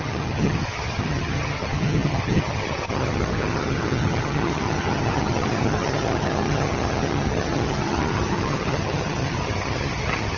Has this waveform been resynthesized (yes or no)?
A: yes